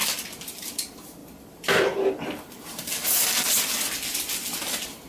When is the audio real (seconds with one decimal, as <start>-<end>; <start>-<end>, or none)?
0.0-5.1